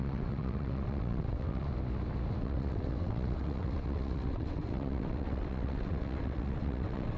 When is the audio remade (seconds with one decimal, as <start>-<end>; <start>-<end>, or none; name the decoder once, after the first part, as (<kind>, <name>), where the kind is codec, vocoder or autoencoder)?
0.0-1.7 (vocoder, WaveNeXt); 2.4-7.2